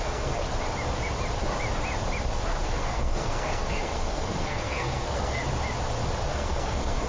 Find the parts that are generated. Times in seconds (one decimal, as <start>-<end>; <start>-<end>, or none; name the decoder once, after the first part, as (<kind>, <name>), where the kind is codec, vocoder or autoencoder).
0.0-0.5 (codec, SNAC); 2.6-5.4; 6.3-7.1